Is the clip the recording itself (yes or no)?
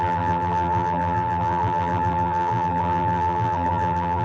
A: no